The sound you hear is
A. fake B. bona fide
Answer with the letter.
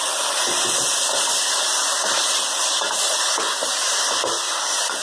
B